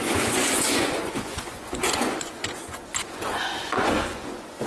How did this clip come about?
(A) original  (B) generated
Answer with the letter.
B